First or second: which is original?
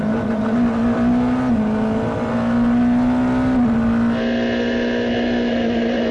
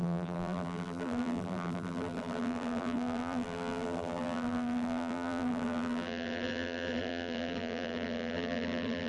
first